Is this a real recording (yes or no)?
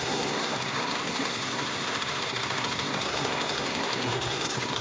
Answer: no